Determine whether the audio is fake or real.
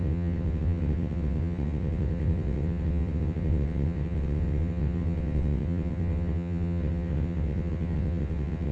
fake